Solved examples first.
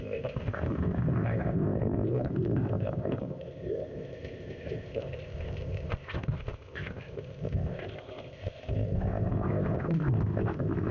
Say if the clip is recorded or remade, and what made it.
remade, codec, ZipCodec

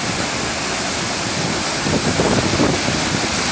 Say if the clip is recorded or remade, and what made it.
recorded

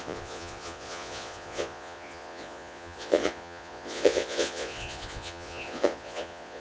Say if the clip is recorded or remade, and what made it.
remade, vocoder, Vocos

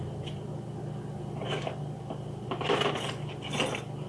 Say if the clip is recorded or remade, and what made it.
recorded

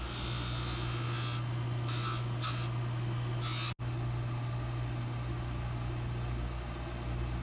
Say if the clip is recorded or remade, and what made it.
recorded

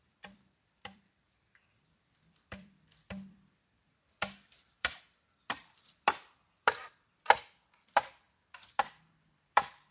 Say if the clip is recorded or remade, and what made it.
remade, vocoder, BigVGAN v2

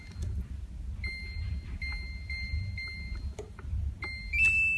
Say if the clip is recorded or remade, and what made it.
recorded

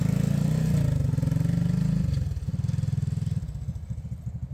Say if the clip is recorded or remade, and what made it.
recorded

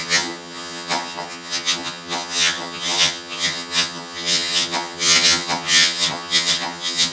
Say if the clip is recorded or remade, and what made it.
remade, vocoder, HiFi-GAN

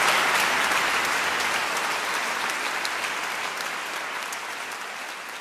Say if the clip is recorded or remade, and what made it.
recorded